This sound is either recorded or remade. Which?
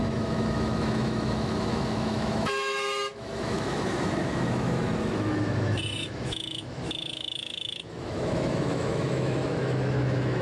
remade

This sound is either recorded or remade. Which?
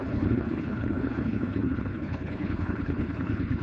remade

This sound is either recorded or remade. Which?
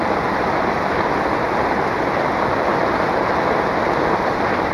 recorded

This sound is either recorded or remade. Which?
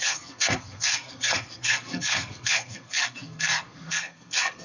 remade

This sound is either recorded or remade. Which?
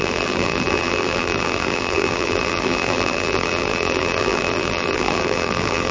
remade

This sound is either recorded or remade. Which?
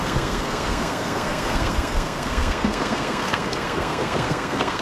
remade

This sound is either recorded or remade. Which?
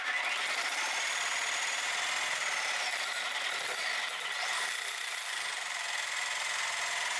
recorded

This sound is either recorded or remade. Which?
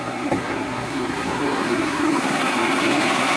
remade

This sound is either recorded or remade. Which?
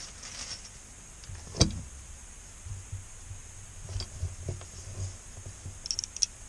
recorded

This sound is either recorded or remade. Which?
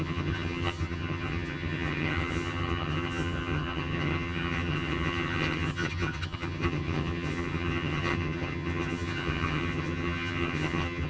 remade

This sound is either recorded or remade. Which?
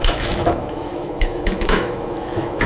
remade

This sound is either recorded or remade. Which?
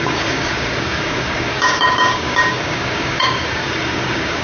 remade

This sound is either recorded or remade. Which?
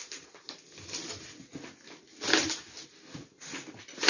recorded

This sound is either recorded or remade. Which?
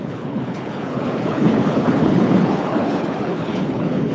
remade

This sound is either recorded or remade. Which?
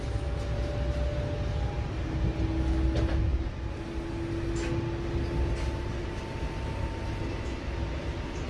recorded